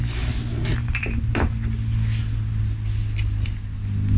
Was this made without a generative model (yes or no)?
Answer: yes